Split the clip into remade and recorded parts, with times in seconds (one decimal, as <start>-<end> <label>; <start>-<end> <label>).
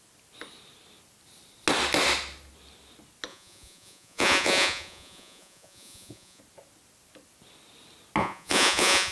0.0-3.3 recorded; 3.3-6.4 remade; 6.4-8.2 recorded; 8.2-9.1 remade